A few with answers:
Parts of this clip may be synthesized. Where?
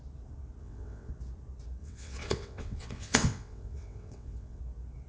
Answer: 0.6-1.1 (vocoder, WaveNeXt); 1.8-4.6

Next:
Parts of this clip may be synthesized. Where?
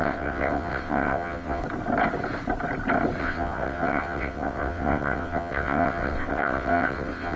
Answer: 0.0-1.6 (vocoder, WaveNeXt); 3.2-7.4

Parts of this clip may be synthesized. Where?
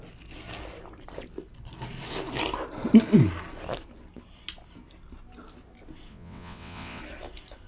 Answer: 6.1-7.0 (vocoder, WaveNeXt)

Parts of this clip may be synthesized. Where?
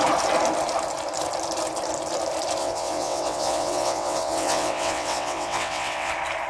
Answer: 2.6-6.1 (vocoder, WaveNeXt)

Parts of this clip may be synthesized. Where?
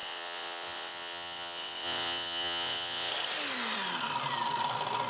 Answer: 0.0-3.1 (vocoder, WaveNeXt)